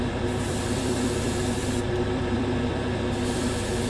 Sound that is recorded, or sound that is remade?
remade